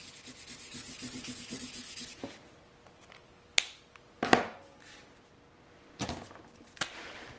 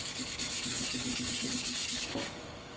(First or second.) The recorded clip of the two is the first